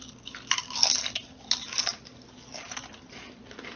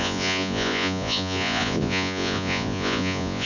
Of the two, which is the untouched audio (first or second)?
first